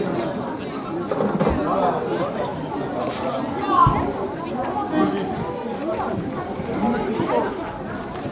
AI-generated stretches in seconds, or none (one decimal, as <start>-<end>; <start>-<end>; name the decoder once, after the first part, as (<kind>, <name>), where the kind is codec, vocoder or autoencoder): 3.8-4.4 (vocoder, BigVGAN v2); 5.8-6.4